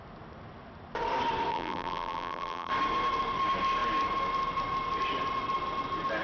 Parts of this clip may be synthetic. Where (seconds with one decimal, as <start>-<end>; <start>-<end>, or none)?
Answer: 1.5-2.7